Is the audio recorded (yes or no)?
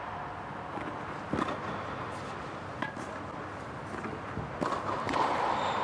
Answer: yes